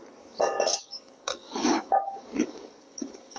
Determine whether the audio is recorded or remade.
remade